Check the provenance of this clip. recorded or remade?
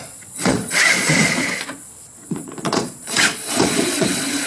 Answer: remade